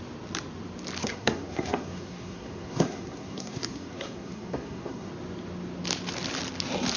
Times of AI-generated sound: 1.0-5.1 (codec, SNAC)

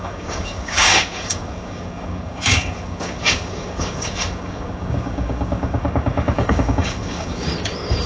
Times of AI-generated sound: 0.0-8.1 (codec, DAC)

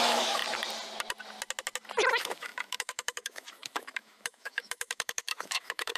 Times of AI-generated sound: 0.0-0.4 (autoencoder, DAC-VAE); 2.1-6.0

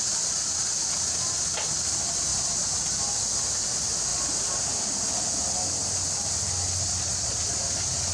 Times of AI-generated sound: 6.9-7.6 (vocoder, Vocos)

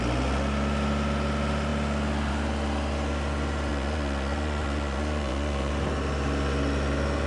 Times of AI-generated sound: 3.7-5.7 (vocoder, Vocos)